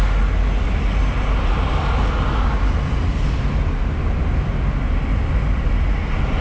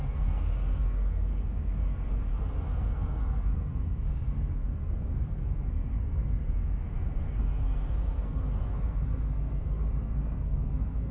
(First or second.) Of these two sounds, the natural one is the first